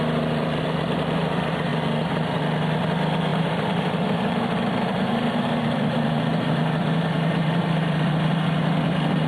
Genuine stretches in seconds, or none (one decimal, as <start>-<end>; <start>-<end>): 0.0-3.3; 8.1-9.3